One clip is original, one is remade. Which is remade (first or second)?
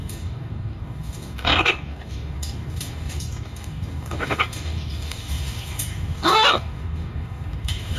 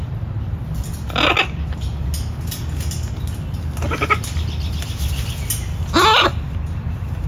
first